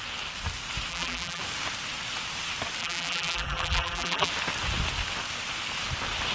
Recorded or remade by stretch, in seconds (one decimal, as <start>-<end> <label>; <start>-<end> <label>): 0.0-0.9 recorded; 0.9-1.4 remade; 1.4-2.8 recorded; 2.8-4.3 remade; 4.3-6.3 recorded